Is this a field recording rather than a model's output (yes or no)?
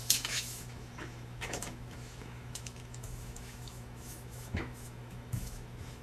no